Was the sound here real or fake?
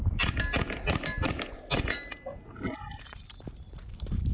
real